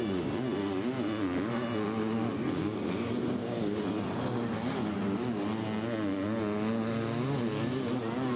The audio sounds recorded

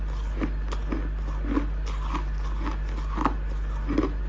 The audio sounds recorded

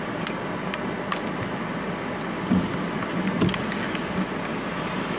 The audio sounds recorded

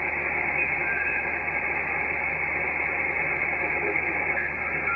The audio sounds recorded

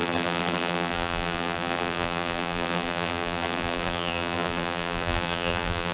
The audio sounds remade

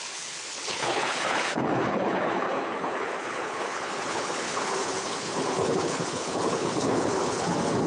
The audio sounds remade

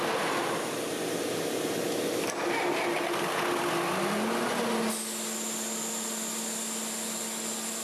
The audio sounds recorded